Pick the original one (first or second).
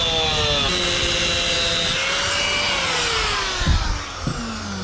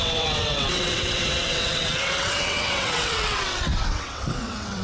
first